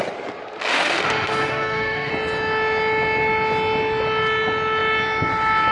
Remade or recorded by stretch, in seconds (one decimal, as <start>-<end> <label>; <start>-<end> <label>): 0.0-0.7 recorded; 0.7-2.1 remade; 2.1-5.7 recorded